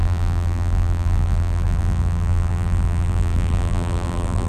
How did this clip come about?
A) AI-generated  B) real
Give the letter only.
A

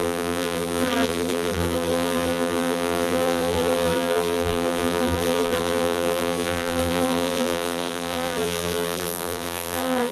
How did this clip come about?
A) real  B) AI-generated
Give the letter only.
B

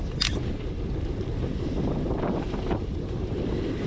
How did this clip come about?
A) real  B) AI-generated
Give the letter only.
B